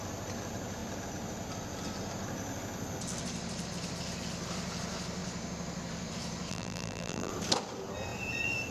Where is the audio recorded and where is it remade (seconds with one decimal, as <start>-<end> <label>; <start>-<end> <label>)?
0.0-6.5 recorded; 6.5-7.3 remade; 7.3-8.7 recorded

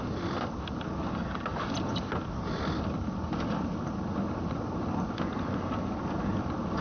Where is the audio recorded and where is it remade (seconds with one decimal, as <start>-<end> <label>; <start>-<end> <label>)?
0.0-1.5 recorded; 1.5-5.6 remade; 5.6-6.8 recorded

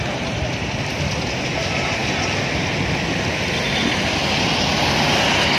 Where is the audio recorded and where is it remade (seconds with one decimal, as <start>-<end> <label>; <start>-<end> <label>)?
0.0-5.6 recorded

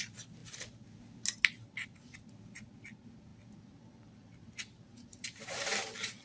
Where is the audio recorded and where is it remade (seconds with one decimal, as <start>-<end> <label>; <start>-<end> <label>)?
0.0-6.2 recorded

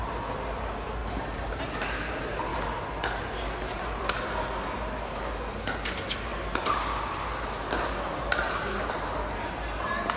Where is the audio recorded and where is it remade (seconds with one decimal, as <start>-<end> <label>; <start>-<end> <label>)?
0.0-1.0 recorded; 1.0-1.6 remade; 1.6-10.2 recorded

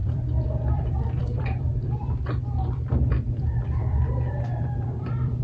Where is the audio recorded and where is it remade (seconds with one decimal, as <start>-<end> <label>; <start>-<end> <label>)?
0.0-5.4 remade

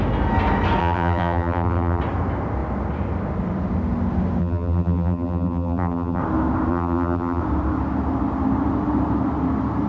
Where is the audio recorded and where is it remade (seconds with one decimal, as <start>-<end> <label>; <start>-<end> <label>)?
0.0-0.8 recorded; 0.8-2.0 remade; 2.0-4.4 recorded; 4.4-6.2 remade; 6.2-6.7 recorded; 6.7-7.4 remade; 7.4-9.9 recorded